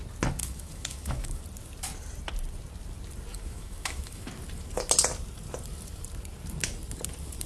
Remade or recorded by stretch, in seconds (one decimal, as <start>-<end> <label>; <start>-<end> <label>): 0.0-0.4 recorded; 0.4-1.4 remade; 1.4-3.3 recorded; 3.3-4.3 remade; 4.3-7.5 recorded